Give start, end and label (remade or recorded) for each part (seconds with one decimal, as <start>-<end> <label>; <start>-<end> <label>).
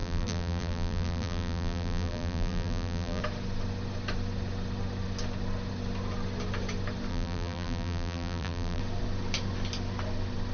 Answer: 0.0-3.2 remade; 3.2-7.1 recorded; 7.1-8.8 remade; 8.8-10.5 recorded